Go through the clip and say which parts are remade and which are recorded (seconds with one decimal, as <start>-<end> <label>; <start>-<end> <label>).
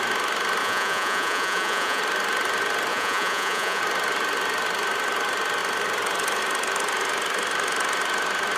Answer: 0.0-0.6 recorded; 0.6-2.0 remade; 2.0-2.9 recorded; 2.9-3.8 remade; 3.8-8.6 recorded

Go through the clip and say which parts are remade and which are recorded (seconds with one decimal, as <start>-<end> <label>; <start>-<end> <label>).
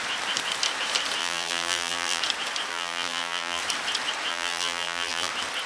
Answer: 0.0-1.2 recorded; 1.2-2.2 remade; 2.2-2.7 recorded; 2.7-3.6 remade; 3.6-4.3 recorded; 4.3-5.3 remade; 5.3-5.7 recorded